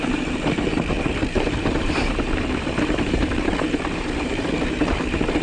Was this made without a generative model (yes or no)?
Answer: no